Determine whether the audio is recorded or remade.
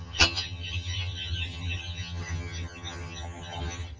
remade